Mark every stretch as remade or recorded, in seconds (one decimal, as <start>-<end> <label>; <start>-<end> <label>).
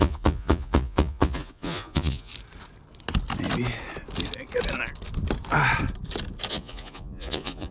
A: 0.0-2.3 remade; 2.3-6.5 recorded; 6.5-7.7 remade